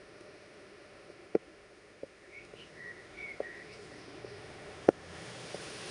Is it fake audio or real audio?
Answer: fake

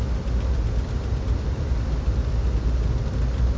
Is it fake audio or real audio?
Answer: real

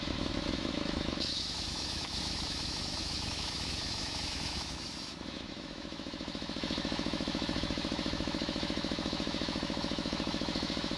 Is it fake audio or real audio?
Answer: fake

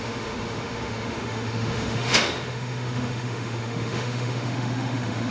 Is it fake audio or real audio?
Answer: fake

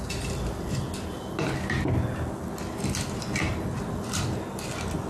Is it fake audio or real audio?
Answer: real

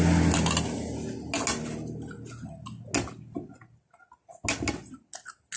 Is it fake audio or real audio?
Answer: real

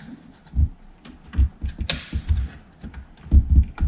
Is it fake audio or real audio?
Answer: real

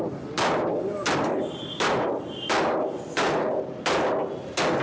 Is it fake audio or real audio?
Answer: real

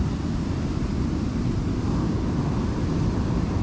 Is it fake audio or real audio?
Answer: real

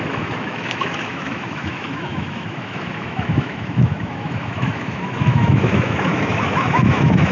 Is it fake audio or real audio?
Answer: fake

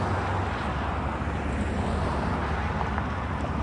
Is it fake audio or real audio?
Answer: real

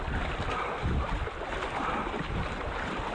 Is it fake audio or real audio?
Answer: real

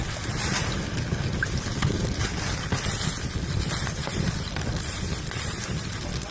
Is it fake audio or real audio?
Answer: real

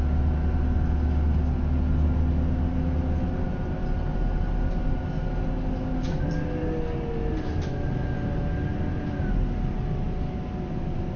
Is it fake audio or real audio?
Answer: real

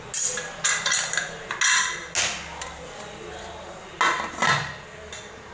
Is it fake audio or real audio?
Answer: real